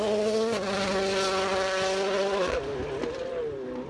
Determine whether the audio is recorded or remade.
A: recorded